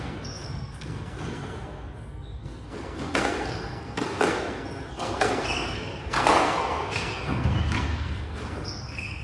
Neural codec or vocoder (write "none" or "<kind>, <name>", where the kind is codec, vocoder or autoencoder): codec, SNAC